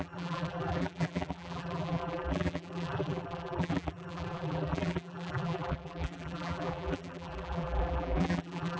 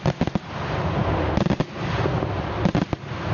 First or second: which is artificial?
first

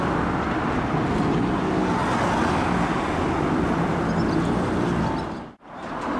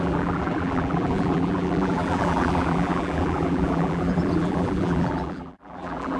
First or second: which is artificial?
second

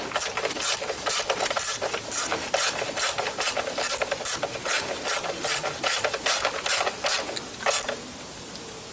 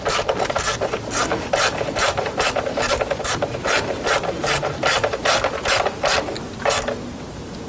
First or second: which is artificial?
first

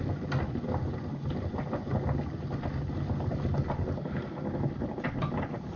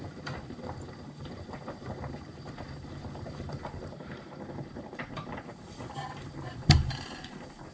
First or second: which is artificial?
second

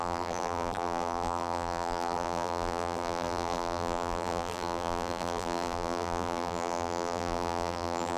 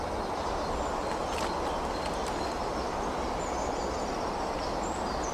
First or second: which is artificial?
first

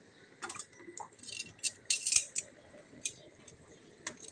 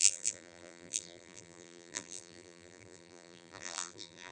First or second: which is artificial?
second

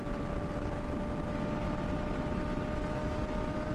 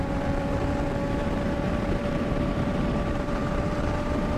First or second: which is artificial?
second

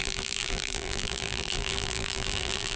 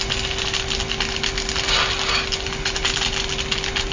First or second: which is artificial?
first